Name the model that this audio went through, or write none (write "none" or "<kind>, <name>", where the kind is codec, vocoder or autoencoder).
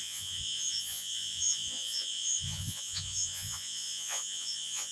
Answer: vocoder, Vocos